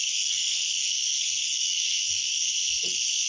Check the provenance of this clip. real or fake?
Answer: fake